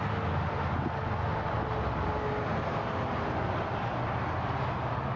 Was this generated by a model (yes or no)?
no